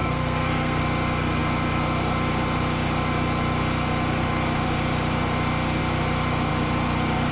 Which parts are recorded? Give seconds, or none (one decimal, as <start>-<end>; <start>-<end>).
0.8-7.3